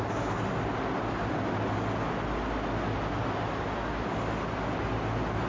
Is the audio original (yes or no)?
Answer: yes